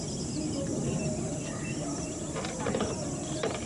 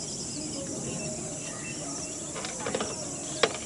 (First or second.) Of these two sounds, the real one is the second